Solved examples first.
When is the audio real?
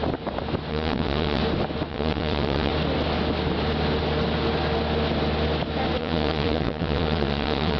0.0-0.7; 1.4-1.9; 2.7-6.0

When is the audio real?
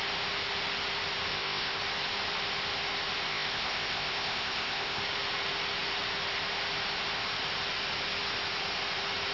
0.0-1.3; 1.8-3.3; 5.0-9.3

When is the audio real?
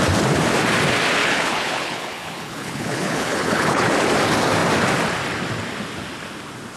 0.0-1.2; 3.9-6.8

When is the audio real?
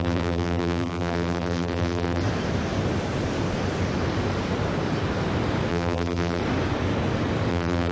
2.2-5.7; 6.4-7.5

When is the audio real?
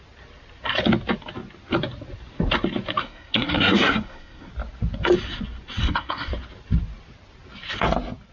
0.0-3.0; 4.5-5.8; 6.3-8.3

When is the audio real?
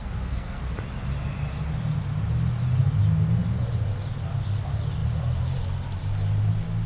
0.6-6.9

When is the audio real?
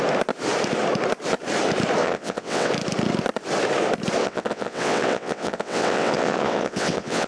0.0-2.0; 2.7-4.2